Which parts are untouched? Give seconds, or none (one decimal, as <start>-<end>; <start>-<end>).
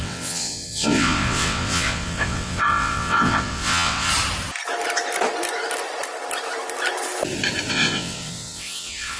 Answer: 4.1-7.7